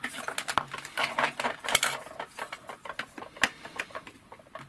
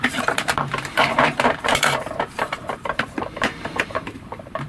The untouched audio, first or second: first